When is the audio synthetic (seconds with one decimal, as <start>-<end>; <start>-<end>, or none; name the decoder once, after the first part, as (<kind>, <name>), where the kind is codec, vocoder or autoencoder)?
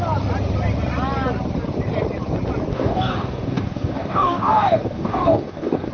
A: 2.7-5.9 (codec, DAC)